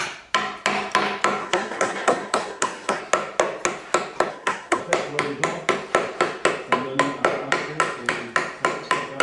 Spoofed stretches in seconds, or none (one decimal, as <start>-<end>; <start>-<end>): 1.4-3.0; 4.3-4.8